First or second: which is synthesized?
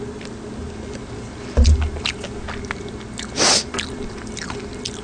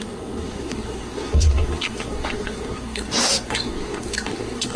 second